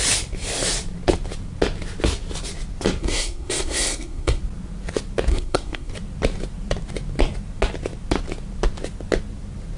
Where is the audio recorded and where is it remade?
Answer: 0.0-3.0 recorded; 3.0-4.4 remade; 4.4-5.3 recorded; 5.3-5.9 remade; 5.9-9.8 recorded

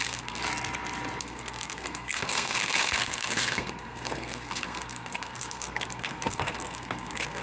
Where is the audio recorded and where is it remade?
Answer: 0.0-0.4 remade; 0.4-1.2 recorded; 1.2-7.4 remade